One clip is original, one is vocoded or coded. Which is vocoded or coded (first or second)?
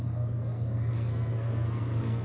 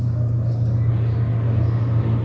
first